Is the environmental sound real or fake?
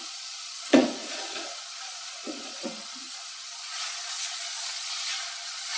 fake